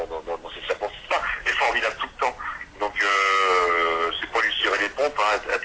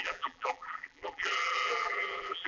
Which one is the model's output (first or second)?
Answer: second